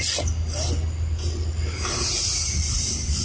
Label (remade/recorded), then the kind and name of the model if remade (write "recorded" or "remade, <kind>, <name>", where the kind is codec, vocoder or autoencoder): recorded